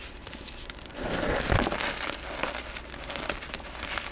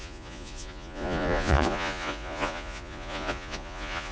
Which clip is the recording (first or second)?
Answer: first